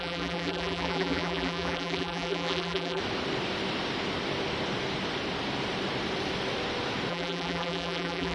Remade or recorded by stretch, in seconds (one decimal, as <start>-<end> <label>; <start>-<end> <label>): 0.0-3.0 remade; 3.0-7.1 recorded; 7.1-8.3 remade